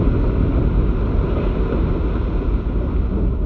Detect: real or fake real